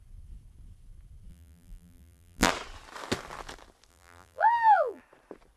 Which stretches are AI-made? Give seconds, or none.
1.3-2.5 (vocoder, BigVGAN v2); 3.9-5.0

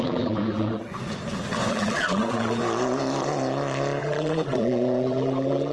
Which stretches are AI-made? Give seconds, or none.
0.0-0.9 (vocoder, BigVGAN v2); 1.7-2.6; 4.0-5.7